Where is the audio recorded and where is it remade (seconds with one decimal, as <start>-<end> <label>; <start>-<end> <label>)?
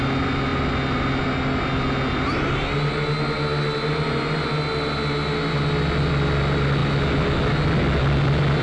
0.0-8.6 recorded